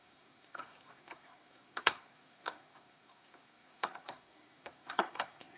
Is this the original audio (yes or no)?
no